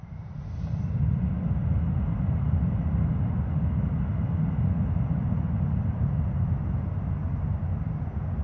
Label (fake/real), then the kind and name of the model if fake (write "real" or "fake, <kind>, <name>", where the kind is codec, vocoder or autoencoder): real